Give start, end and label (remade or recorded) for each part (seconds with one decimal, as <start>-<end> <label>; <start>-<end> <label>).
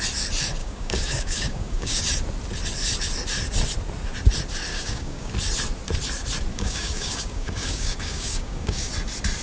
0.0-0.6 recorded; 0.6-2.0 remade; 2.0-4.7 recorded; 4.7-5.3 remade; 5.3-6.5 recorded; 6.5-8.9 remade; 8.9-9.4 recorded